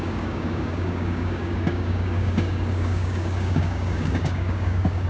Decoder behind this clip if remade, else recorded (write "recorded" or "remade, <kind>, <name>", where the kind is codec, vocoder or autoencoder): remade, codec, DAC